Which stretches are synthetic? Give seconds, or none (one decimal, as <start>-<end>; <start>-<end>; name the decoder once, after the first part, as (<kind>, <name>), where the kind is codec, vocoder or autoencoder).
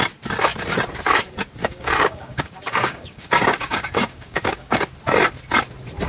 1.6-4.8 (codec, DAC)